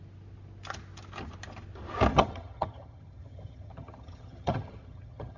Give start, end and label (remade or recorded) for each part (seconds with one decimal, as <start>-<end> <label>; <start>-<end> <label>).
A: 0.0-2.1 recorded; 2.1-5.4 remade